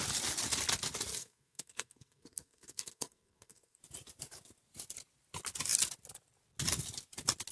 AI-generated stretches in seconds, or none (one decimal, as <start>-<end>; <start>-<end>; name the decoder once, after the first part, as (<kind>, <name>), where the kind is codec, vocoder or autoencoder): 1.1-3.8 (codec, SNAC)

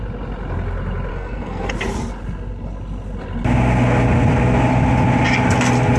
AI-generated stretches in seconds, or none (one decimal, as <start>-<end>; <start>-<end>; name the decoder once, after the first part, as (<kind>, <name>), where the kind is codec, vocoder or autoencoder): 1.1-1.7 (codec, SNAC)

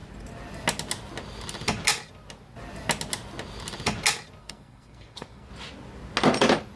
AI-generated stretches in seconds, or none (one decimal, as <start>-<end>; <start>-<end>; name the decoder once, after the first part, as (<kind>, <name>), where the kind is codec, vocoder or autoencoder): 4.4-5.5 (codec, SNAC)

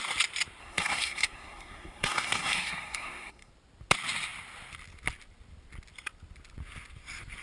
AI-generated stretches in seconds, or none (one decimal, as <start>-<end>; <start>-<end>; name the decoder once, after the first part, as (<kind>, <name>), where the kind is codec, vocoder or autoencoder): 0.6-3.5 (codec, SNAC)

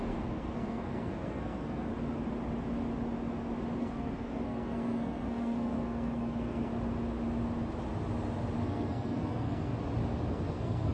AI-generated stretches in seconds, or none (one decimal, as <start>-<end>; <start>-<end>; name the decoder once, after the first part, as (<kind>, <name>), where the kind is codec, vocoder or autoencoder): 0.0-1.9 (codec, SNAC); 3.8-6.7; 8.6-9.7; 10.3-10.9

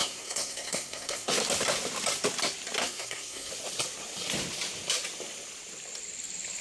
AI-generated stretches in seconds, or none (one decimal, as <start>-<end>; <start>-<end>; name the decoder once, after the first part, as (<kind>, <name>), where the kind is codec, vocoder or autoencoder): 0.0-1.3 (codec, SNAC); 2.8-3.5

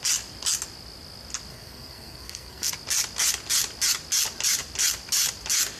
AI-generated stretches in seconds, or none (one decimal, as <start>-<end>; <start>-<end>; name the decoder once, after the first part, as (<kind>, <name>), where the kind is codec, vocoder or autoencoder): 1.5-2.7 (codec, SNAC)

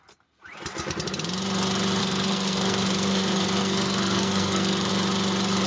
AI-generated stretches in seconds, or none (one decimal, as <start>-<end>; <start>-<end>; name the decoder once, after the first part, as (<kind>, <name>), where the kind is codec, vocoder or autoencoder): 2.0-4.9 (codec, SNAC)